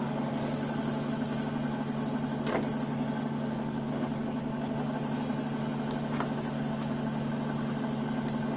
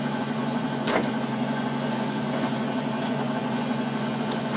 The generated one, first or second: second